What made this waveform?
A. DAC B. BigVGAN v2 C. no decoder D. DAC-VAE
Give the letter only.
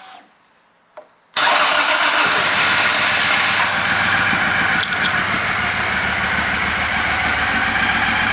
B